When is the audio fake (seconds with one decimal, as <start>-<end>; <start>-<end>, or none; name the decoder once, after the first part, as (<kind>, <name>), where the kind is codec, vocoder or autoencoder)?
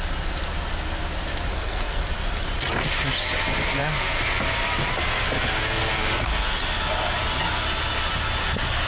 1.5-2.0 (codec, SNAC)